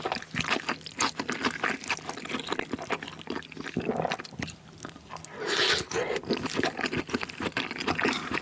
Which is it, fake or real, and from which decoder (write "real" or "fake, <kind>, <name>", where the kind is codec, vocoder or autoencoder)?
real